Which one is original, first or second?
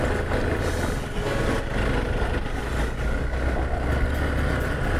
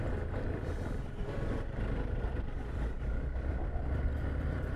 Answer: first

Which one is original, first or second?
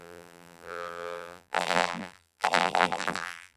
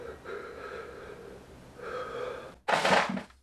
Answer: second